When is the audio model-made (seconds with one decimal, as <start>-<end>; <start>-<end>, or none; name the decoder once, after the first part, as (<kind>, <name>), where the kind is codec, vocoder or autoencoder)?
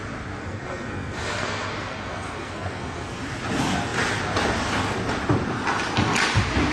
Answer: 0.4-3.2 (codec, SNAC)